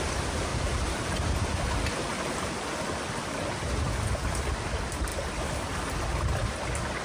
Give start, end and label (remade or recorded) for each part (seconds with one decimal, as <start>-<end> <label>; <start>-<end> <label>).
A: 0.0-0.5 recorded; 0.5-2.5 remade; 2.5-7.0 recorded